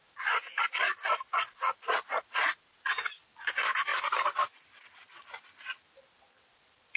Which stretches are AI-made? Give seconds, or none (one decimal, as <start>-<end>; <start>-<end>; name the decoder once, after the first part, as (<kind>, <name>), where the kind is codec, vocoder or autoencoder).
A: none